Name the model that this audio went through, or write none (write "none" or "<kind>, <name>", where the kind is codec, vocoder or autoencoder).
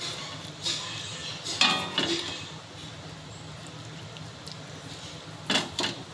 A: none